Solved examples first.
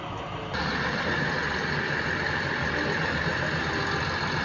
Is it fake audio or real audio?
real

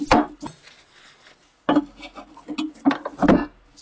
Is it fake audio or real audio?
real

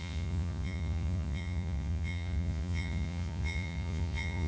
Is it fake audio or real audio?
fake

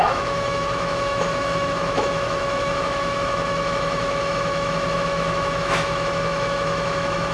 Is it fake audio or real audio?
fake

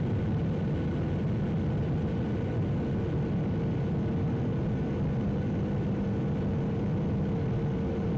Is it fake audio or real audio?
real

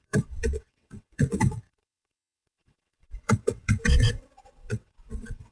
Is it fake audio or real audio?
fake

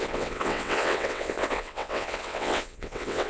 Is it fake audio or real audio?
fake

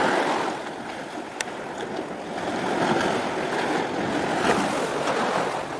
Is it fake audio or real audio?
real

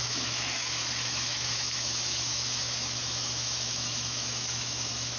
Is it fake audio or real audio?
fake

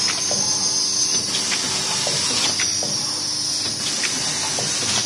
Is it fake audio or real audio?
real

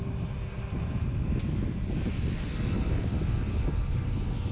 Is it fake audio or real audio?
real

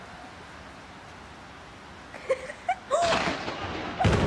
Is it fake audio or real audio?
real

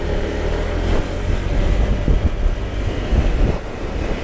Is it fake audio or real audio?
real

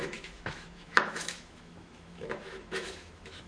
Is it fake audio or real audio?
fake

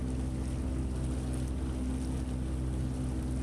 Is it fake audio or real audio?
real